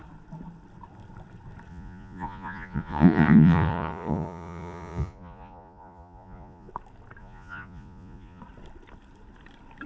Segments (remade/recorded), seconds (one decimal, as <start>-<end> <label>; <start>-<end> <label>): 0.0-1.7 recorded; 1.7-6.7 remade; 6.7-7.2 recorded; 7.2-8.4 remade; 8.4-9.9 recorded